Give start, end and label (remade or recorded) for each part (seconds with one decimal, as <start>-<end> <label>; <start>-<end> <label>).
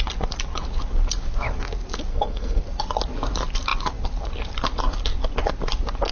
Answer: 0.0-2.1 recorded; 2.1-2.6 remade; 2.6-6.1 recorded